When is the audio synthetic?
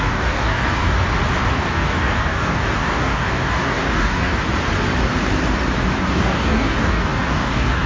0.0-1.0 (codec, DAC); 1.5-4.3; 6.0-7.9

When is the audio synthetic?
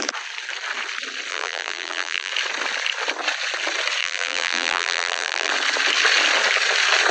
1.3-2.3 (vocoder, BigVGAN v2); 4.0-5.5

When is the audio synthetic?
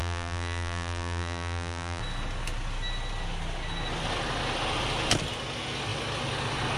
0.0-2.0 (vocoder, BigVGAN v2)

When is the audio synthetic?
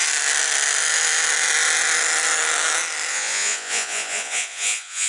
3.1-5.1 (vocoder, Vocos)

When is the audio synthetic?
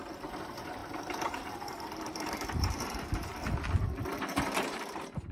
0.0-3.3 (vocoder, BigVGAN v2); 4.4-5.3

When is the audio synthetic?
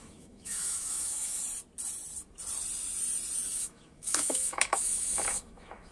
0.0-1.4 (autoencoder, DAC-VAE); 3.5-5.9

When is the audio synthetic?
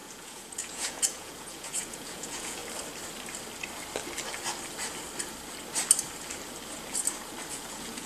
0.0-2.6 (vocoder, Vocos); 7.5-8.1